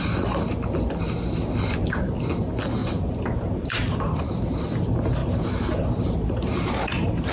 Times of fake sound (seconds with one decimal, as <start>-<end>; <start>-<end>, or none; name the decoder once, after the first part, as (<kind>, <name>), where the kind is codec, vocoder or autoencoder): 2.8-4.2 (vocoder, BigVGAN v2); 5.2-7.3